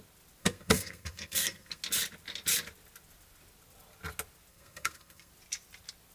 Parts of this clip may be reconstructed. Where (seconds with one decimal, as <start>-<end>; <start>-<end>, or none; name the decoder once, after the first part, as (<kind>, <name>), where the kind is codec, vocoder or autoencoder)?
0.4-1.8 (codec, SNAC); 4.5-5.3